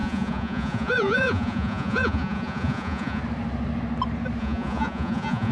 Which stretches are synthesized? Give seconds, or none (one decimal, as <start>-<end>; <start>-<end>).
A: 0.0-3.2; 4.4-5.5

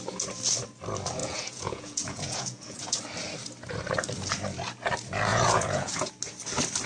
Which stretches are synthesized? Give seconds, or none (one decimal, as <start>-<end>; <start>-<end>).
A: 1.2-3.0; 5.3-6.1

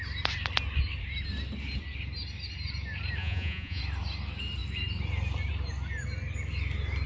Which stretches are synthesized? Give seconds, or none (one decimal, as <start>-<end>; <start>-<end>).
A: 3.2-3.8

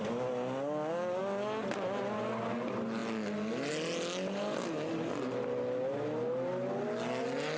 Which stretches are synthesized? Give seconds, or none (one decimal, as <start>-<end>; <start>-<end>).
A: none

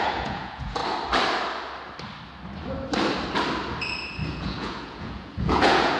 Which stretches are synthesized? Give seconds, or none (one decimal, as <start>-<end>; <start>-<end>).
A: 0.0-0.8; 4.3-6.0